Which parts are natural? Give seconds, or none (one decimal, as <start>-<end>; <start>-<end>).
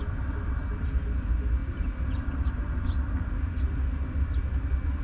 0.0-5.0